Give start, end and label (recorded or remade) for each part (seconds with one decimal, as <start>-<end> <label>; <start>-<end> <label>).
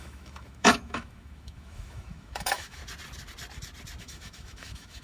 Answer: 0.0-2.8 remade; 2.8-4.0 recorded; 4.0-5.0 remade